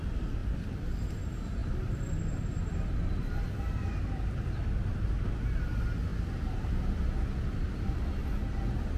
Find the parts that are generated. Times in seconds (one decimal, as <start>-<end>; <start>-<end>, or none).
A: 1.6-2.2